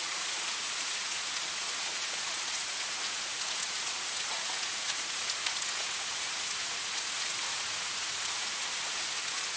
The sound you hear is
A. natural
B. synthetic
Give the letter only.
B